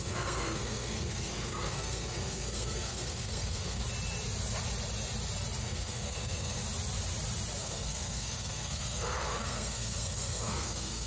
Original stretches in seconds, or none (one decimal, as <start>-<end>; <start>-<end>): 3.8-5.6; 6.6-7.6